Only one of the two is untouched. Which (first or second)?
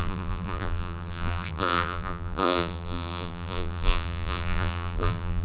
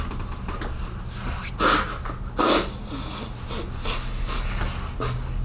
second